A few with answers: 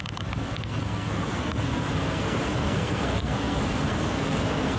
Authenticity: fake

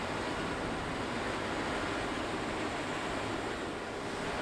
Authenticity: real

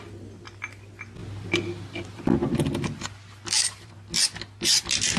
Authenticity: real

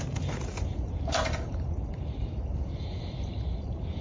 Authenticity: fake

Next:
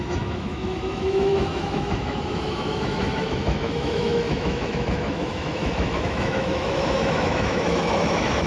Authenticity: fake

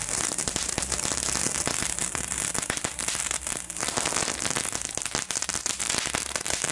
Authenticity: real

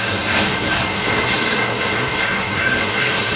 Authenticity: fake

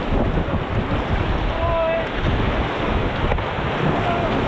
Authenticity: real